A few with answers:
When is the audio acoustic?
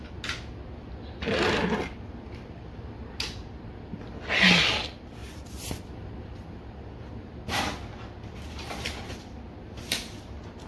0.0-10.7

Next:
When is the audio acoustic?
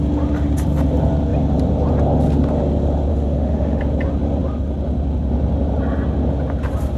0.0-3.1; 3.8-7.0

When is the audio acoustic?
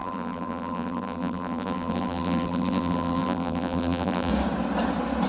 4.3-5.3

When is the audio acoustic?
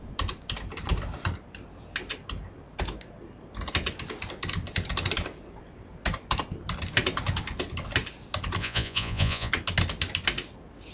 0.0-8.6; 9.5-10.9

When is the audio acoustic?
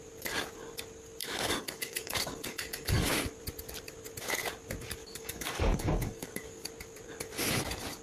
0.0-1.2; 3.1-5.0; 6.7-8.0